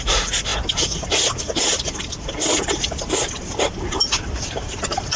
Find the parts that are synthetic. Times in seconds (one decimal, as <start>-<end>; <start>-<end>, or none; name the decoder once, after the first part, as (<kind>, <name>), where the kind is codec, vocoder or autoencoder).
none